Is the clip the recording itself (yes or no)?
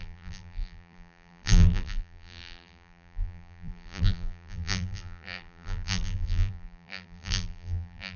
no